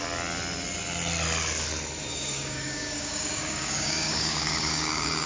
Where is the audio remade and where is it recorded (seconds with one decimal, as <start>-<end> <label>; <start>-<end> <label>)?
0.0-2.1 recorded; 2.1-5.3 remade